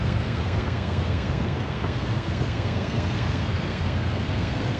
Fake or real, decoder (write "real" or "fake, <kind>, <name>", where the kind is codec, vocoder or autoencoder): fake, codec, SNAC